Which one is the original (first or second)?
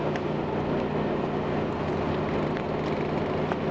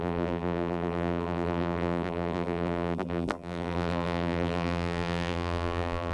first